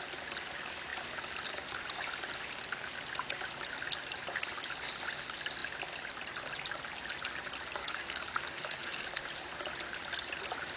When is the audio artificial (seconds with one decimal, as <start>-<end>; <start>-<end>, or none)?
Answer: 7.8-9.1

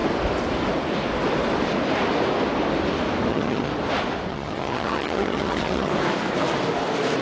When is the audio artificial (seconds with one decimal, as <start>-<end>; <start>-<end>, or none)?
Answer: 3.3-3.7; 4.3-5.9

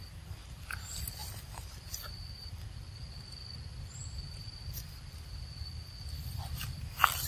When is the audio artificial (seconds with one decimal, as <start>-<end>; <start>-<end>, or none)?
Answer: 0.0-7.3

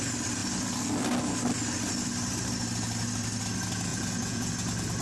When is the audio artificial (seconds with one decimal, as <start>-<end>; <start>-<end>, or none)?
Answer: 3.9-4.5

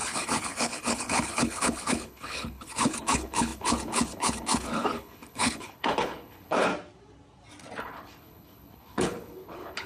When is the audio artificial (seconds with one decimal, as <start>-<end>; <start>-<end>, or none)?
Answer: 0.0-6.7; 7.8-9.9

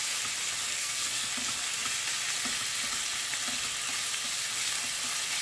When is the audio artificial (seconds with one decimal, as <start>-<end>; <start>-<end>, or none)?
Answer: 0.7-1.3